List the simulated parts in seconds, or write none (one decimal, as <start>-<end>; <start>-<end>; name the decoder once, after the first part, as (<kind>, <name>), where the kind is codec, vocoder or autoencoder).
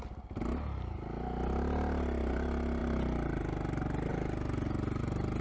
none